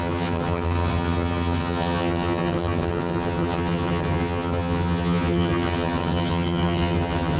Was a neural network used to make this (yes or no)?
yes